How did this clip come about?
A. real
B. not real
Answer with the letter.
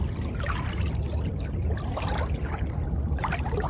A